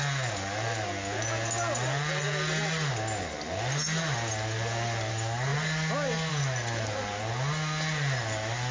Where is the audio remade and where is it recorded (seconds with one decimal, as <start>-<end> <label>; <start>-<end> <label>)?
0.0-8.7 recorded